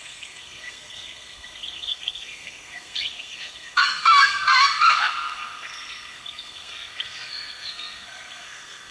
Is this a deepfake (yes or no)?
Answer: yes